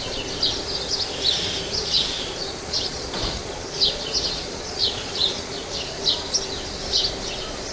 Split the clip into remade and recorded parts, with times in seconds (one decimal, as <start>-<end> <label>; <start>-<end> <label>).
0.0-1.8 recorded; 1.8-6.0 remade; 6.0-7.7 recorded

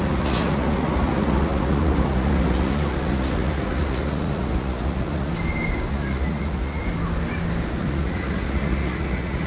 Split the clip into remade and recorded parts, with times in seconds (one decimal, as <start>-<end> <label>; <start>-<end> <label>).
0.0-5.3 remade; 5.3-5.9 recorded; 5.9-6.8 remade; 6.8-7.8 recorded; 7.8-9.5 remade

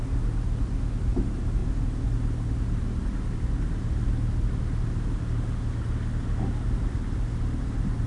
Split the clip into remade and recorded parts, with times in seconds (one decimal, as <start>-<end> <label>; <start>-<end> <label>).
0.0-8.1 recorded

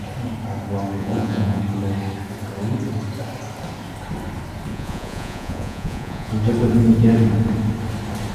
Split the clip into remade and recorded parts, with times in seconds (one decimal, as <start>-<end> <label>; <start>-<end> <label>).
0.0-1.0 recorded; 1.0-1.6 remade; 1.6-4.7 recorded; 4.7-6.3 remade; 6.3-8.3 recorded

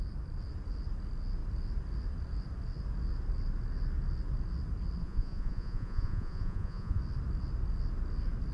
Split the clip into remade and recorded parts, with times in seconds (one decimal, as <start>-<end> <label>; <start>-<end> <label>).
0.0-5.0 recorded; 5.0-7.0 remade; 7.0-8.5 recorded